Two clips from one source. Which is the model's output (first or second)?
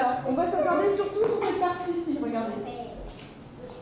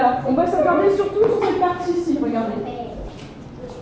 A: second